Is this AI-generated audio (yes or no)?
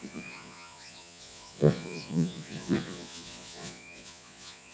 yes